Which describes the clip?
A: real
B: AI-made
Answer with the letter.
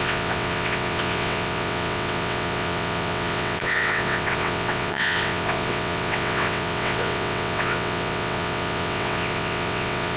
B